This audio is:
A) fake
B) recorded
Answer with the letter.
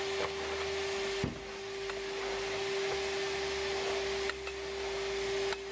B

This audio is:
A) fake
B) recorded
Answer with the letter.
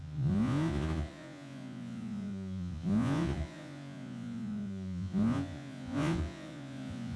A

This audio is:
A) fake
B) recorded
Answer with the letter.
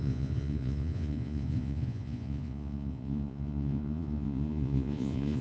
A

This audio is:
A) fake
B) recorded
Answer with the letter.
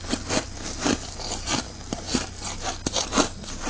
B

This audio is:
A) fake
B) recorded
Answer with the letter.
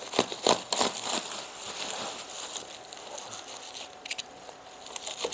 B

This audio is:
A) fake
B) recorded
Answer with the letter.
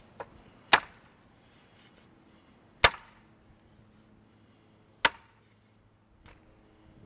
B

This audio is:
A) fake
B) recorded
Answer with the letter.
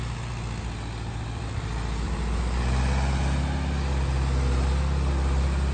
B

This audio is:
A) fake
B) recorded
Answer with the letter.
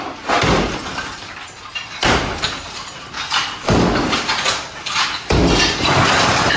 B